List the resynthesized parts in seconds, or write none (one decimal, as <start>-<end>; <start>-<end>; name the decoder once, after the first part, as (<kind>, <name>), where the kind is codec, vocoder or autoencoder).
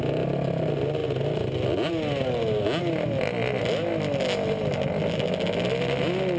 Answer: none